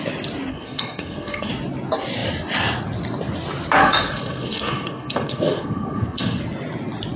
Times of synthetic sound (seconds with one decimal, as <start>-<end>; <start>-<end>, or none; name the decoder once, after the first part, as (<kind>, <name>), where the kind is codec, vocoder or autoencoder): 0.5-1.5 (codec, SNAC); 3.8-6.4